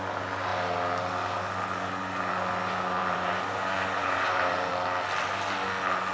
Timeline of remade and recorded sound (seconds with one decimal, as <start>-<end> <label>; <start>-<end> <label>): 0.0-3.0 recorded; 3.0-4.7 remade; 4.7-6.1 recorded